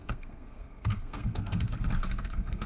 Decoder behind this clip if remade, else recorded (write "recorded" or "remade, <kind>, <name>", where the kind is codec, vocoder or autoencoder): remade, codec, SNAC